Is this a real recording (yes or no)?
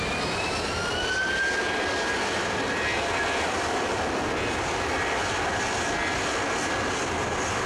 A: yes